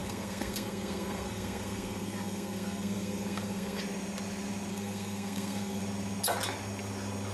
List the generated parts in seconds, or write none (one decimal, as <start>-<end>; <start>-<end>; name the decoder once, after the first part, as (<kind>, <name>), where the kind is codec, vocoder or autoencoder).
0.0-3.8 (codec, SNAC); 4.7-5.8